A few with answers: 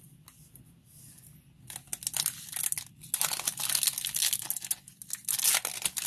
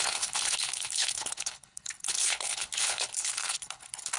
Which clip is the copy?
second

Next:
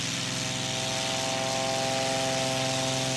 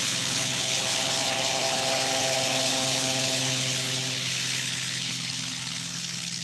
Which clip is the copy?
second